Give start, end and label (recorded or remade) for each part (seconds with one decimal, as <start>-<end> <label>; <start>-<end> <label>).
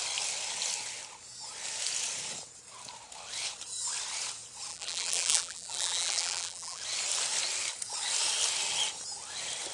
0.0-4.7 recorded; 4.7-6.8 remade; 6.8-9.7 recorded